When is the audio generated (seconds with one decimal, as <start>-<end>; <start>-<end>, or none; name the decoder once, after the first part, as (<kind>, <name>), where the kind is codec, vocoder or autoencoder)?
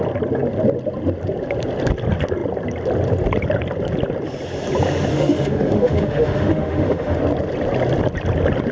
5.1-7.2 (autoencoder, DAC-VAE)